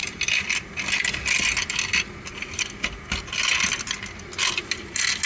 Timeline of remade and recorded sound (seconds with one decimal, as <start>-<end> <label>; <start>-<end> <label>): 0.0-5.3 recorded